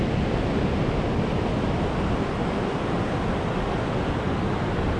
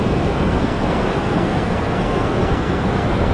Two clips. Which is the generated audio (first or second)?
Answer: second